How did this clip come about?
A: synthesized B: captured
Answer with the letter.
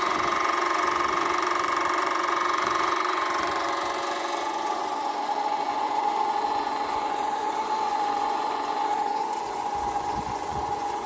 A